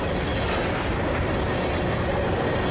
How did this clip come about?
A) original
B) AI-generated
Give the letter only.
A